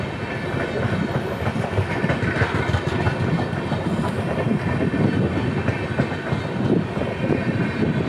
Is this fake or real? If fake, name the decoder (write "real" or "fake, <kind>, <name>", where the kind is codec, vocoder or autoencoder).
real